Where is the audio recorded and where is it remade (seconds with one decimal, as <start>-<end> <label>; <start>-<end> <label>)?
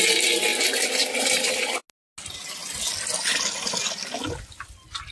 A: 0.0-5.1 recorded